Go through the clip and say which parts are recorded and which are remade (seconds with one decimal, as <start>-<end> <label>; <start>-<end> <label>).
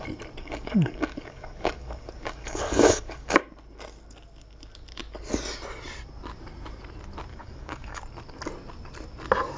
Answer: 0.0-0.4 recorded; 0.4-3.4 remade; 3.4-7.3 recorded; 7.3-8.0 remade; 8.0-9.6 recorded